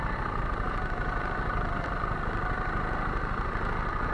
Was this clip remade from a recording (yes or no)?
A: no